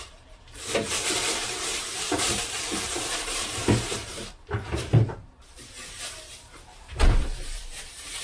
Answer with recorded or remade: remade